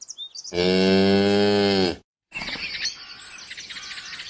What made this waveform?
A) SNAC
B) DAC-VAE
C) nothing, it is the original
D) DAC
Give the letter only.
C